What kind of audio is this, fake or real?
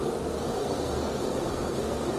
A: fake